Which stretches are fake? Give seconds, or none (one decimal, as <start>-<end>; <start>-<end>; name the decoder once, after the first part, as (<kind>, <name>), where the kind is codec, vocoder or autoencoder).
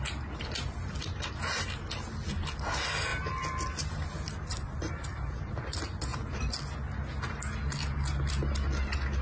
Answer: 3.1-5.5 (vocoder, BigVGAN v2)